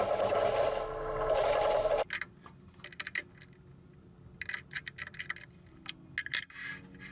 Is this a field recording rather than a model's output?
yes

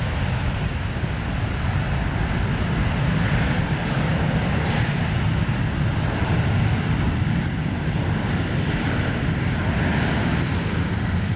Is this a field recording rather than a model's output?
yes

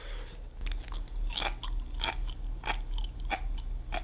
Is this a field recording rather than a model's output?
yes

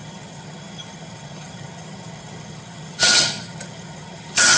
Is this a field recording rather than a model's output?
no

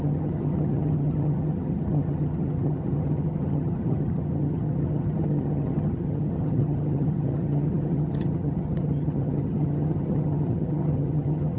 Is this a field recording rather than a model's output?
no